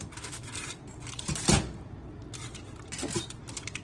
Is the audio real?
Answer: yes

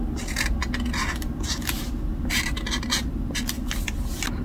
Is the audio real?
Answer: yes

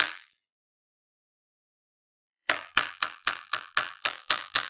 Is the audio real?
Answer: no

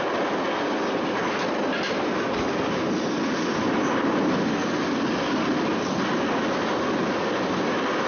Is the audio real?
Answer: yes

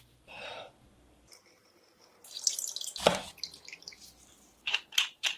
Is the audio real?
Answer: no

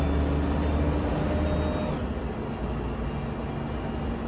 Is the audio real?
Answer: yes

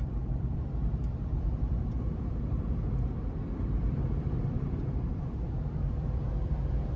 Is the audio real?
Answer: no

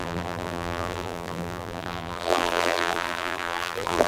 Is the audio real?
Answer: no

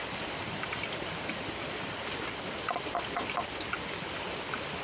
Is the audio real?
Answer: no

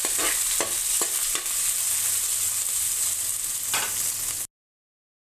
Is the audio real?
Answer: yes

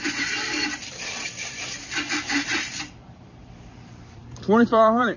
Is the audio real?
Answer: no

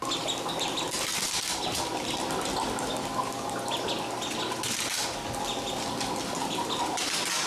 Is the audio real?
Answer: yes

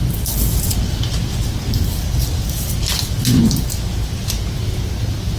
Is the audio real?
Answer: yes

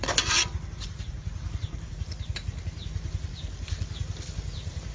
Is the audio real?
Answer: no